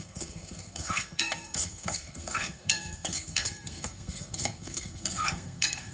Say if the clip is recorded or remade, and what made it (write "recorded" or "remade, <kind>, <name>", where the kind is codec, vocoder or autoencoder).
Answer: remade, codec, SNAC